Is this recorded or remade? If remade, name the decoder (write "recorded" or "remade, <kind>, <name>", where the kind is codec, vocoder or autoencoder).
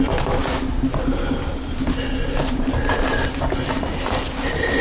recorded